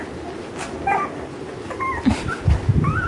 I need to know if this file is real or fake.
real